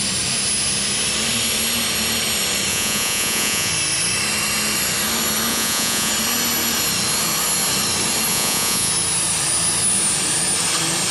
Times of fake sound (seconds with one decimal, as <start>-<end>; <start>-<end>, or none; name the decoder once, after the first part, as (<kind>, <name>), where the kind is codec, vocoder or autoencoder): 2.7-3.7 (vocoder, Vocos); 5.5-6.1; 8.3-8.9